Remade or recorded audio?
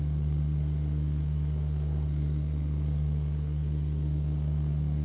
remade